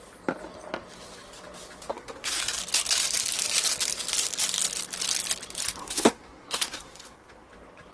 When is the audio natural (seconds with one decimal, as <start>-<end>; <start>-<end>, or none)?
0.0-1.9; 2.4-5.8; 7.5-7.9